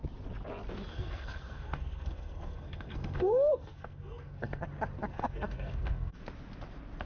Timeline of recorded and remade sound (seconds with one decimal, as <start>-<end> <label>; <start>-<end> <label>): 0.0-0.9 recorded; 0.9-4.6 remade; 4.6-5.0 recorded; 5.0-6.2 remade; 6.2-7.1 recorded